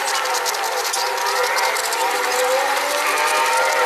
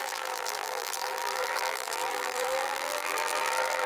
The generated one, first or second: second